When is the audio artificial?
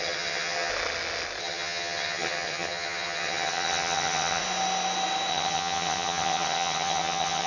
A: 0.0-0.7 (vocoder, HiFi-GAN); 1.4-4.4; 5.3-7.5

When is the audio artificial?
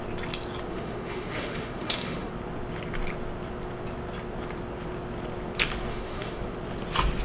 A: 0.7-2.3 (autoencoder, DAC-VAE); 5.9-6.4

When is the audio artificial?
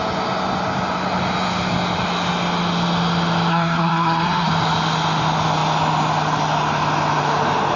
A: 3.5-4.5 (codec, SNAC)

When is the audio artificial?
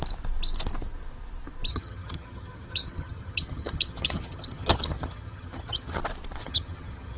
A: 1.7-6.0 (vocoder, HiFi-GAN); 6.4-7.2